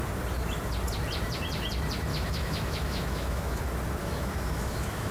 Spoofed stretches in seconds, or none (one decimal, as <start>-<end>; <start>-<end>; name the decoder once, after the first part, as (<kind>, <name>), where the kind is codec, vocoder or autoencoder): 2.1-3.6 (autoencoder, DAC-VAE); 4.0-5.1